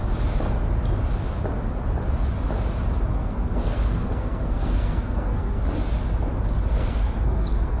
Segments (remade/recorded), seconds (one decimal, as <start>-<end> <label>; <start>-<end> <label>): 0.0-3.1 recorded; 3.1-5.6 remade; 5.6-6.7 recorded; 6.7-7.8 remade